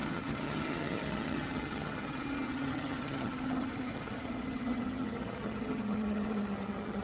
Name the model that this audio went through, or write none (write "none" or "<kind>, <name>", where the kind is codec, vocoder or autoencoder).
vocoder, HiFi-GAN